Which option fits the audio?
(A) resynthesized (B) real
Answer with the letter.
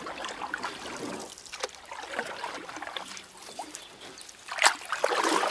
B